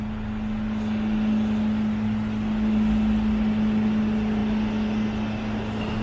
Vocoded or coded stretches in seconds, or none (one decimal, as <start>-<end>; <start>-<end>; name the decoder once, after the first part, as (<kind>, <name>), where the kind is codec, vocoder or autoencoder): none